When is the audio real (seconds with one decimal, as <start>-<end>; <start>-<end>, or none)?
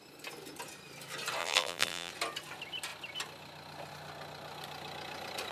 0.0-1.4; 2.1-5.5